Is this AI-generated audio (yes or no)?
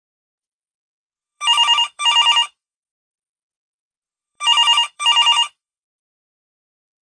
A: yes